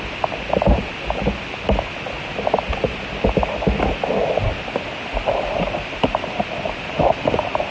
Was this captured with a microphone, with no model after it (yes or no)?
yes